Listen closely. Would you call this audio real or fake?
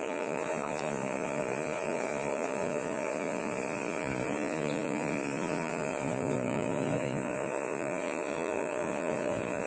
fake